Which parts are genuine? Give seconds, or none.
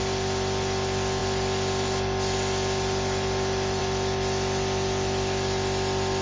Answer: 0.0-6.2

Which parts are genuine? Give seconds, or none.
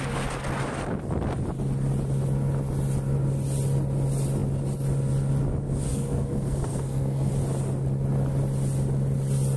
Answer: 0.0-5.9; 7.3-9.6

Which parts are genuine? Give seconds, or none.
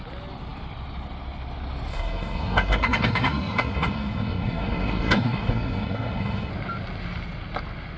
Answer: 0.0-1.9; 6.5-8.0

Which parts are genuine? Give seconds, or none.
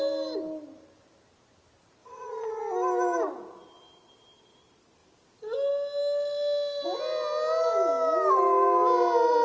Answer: 0.0-2.0; 2.6-9.4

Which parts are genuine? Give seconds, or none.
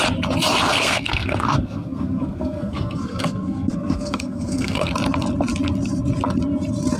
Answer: 0.0-0.7; 4.9-7.0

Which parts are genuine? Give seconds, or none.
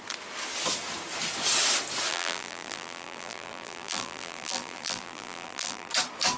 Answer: 0.0-2.1; 5.9-6.4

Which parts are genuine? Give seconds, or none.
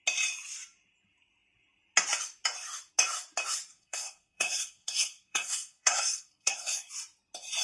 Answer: 0.0-3.7; 6.9-7.6